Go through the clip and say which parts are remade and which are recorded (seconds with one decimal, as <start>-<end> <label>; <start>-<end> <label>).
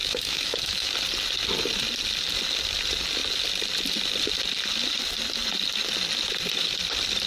0.0-0.9 remade; 0.9-7.3 recorded